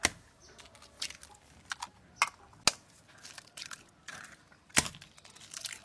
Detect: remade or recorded recorded